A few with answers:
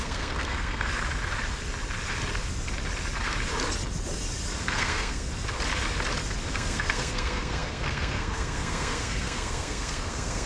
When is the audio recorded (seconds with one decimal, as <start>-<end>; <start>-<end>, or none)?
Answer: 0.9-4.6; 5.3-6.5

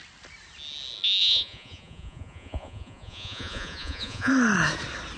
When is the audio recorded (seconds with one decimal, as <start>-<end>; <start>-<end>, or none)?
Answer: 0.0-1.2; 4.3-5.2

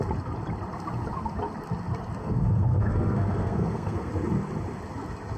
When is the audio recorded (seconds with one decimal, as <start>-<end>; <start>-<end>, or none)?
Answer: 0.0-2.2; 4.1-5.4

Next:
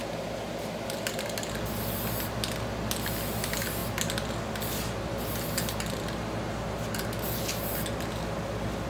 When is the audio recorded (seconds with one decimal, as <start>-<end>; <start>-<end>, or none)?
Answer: 0.0-8.9

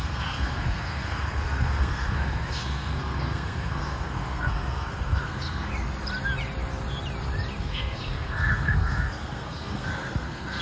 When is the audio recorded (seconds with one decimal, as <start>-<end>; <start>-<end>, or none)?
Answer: 5.7-7.6

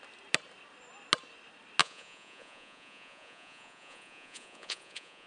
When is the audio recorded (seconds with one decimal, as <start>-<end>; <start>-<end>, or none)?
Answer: 0.0-1.8

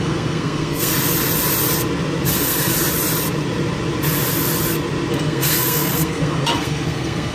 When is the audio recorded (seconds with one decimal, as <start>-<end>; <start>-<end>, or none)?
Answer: 0.9-2.3; 2.7-5.1